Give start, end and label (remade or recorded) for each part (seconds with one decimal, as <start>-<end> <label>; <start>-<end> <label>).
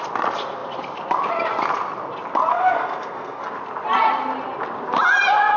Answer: 0.0-2.5 recorded; 2.5-3.4 remade; 3.4-5.6 recorded